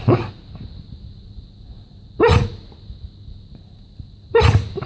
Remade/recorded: recorded